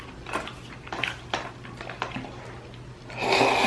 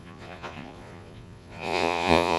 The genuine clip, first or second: first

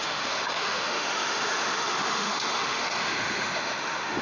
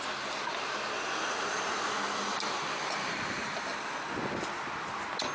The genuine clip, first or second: second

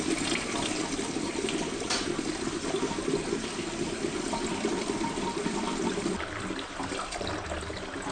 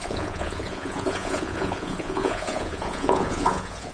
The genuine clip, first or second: first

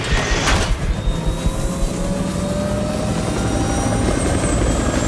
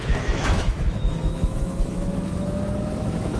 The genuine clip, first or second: first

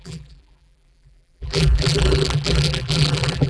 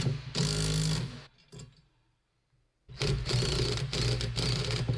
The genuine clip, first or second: second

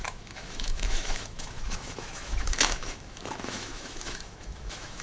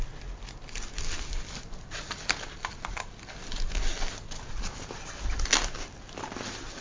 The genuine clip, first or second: second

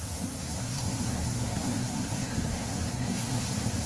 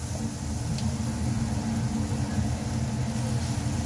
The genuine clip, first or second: second